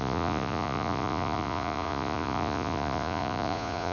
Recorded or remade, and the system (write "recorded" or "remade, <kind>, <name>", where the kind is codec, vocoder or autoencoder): remade, vocoder, Vocos